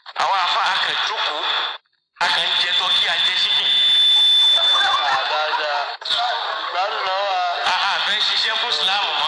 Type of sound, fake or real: real